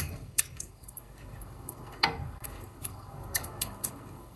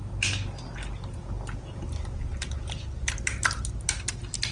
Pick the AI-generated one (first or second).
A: first